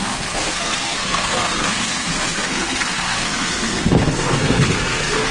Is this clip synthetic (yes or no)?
yes